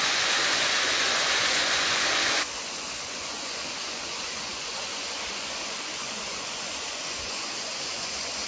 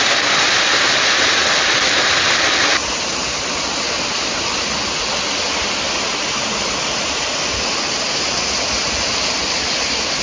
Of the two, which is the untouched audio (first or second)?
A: second